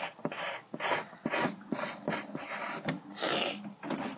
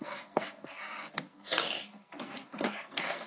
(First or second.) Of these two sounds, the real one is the first